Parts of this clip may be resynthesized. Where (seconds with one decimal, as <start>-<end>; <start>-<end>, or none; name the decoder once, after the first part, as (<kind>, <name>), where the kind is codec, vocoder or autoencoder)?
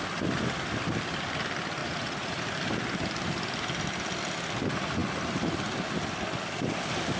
1.8-2.4 (vocoder, Vocos)